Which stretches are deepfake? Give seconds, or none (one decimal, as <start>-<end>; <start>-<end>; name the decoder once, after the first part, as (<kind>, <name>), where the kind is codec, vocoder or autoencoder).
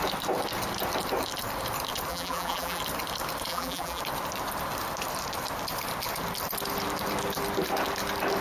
2.1-2.8 (vocoder, BigVGAN v2); 3.5-4.0